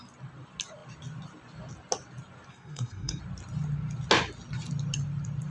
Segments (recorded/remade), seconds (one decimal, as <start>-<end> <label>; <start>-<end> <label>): 0.0-2.5 recorded; 2.5-3.2 remade; 3.2-5.5 recorded